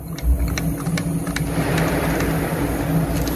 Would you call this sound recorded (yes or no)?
yes